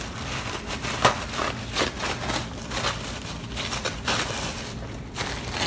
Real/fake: fake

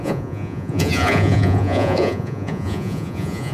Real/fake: fake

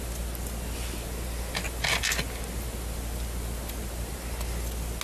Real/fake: real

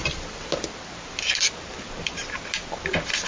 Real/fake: real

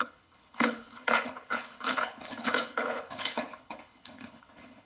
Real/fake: fake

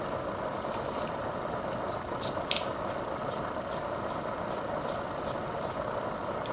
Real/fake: real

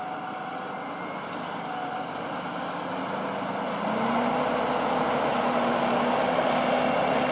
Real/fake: real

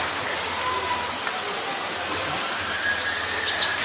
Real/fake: real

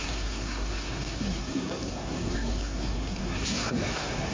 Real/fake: fake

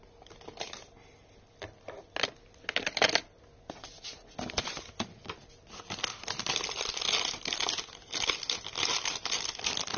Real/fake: real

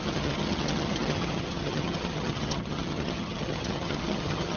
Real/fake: fake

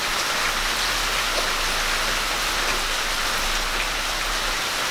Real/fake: real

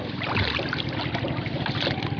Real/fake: real